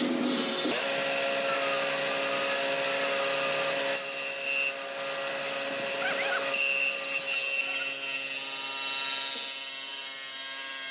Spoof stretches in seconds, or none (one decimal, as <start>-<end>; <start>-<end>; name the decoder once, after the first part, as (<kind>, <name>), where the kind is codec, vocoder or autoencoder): none